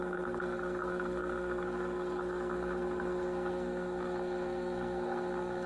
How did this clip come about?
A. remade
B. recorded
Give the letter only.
A